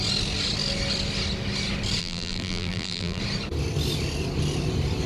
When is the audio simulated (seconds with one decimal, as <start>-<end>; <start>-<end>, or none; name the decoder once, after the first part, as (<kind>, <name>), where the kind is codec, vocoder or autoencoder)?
2.0-3.2 (vocoder, BigVGAN v2)